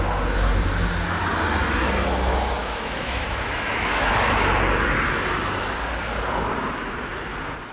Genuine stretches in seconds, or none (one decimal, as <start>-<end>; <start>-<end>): 0.0-2.6; 4.4-7.7